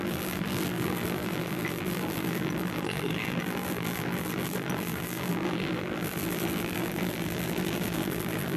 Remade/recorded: remade